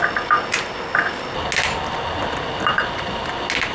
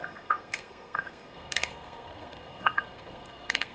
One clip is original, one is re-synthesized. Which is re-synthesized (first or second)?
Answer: second